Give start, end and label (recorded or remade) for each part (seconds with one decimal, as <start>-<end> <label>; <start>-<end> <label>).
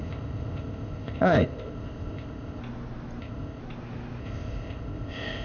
0.0-2.6 remade; 2.6-3.2 recorded; 3.2-3.6 remade; 3.6-4.2 recorded; 4.2-5.4 remade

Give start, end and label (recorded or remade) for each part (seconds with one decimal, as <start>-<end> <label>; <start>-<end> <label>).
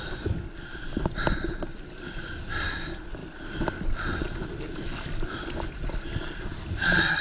0.0-7.2 recorded